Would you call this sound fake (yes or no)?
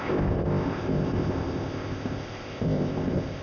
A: yes